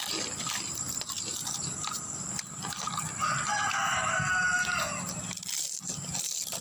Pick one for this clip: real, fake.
real